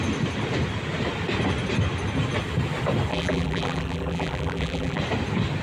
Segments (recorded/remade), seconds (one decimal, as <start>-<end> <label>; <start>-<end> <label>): 0.0-3.1 recorded; 3.1-5.0 remade; 5.0-5.6 recorded